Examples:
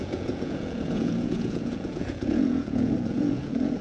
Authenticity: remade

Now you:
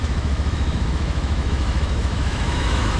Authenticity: remade